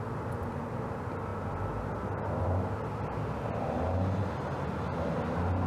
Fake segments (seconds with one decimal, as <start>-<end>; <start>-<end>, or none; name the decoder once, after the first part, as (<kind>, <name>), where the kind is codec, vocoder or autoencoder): none

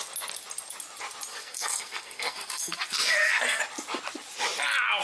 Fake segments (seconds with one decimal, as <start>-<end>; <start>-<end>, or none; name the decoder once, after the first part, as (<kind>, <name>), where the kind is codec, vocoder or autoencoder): 1.3-3.6 (codec, SNAC)

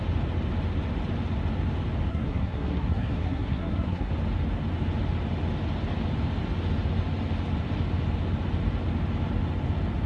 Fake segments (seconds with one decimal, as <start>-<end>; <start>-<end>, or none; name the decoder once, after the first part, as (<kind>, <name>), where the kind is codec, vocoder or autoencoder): 2.1-4.1 (codec, SNAC)

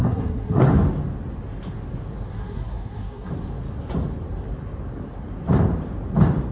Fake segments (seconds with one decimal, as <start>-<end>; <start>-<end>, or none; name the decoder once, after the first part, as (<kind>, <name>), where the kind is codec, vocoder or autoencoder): 0.0-0.7 (codec, SNAC); 2.3-3.3

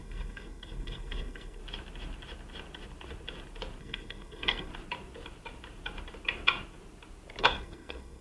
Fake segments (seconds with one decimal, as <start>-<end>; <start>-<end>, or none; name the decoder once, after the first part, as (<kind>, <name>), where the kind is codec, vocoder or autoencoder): 0.0-1.6 (codec, SNAC); 3.8-4.7; 7.4-8.2

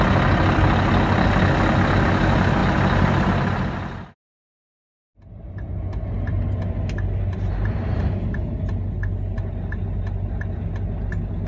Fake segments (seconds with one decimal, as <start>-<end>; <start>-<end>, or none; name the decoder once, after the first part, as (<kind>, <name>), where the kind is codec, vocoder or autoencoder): none

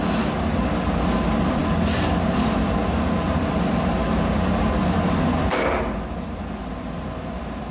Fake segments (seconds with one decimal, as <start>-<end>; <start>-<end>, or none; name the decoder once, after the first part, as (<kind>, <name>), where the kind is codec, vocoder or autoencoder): none

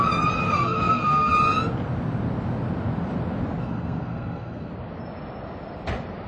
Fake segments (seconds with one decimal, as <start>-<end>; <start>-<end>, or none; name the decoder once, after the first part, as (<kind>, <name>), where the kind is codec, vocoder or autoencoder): 0.5-1.3 (codec, SNAC); 3.6-4.7